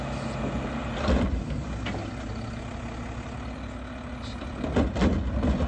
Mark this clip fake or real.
real